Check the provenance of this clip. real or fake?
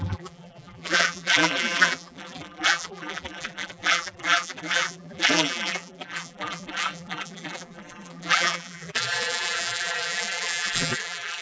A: fake